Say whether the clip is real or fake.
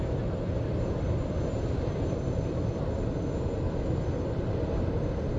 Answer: real